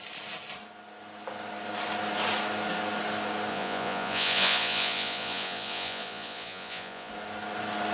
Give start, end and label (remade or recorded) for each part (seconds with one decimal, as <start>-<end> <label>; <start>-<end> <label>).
0.0-3.5 recorded; 3.5-7.1 remade; 7.1-7.9 recorded